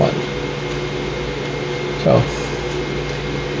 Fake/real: real